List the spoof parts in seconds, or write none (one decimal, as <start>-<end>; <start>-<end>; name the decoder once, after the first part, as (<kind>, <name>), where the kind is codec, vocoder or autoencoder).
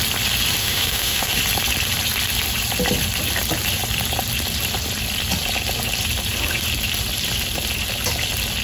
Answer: 0.6-1.4 (autoencoder, DAC-VAE)